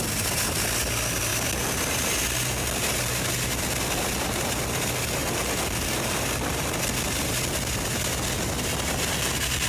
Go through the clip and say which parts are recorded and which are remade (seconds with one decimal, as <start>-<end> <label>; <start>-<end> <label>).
0.0-9.7 recorded